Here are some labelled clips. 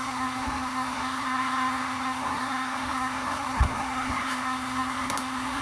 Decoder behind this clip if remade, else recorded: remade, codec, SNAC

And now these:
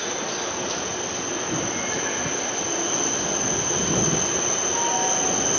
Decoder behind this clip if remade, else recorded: recorded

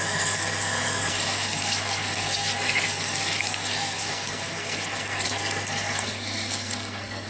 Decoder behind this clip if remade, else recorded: remade, codec, SNAC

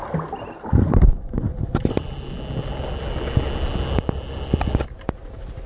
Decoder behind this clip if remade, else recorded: recorded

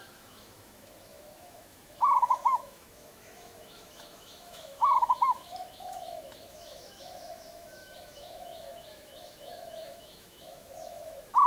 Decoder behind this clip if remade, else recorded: remade, autoencoder, DAC-VAE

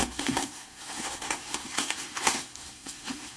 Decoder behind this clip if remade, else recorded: remade, codec, SNAC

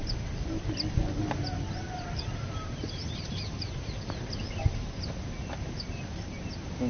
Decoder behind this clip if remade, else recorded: recorded